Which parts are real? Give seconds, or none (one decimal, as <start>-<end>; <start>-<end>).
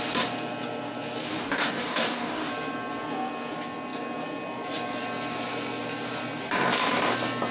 0.0-1.2; 2.5-7.5